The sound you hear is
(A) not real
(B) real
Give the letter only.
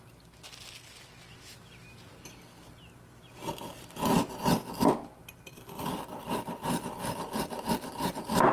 B